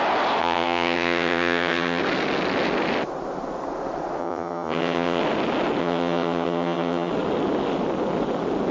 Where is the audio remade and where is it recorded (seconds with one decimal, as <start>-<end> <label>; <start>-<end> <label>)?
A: 0.0-0.4 recorded; 0.4-2.0 remade; 2.0-4.2 recorded; 4.2-5.2 remade; 5.2-5.8 recorded; 5.8-7.1 remade; 7.1-8.7 recorded